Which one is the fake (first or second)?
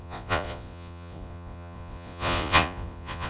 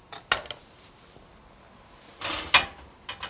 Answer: first